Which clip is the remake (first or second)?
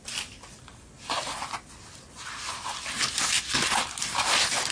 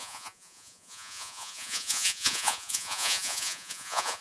second